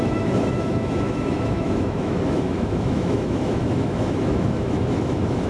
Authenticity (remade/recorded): remade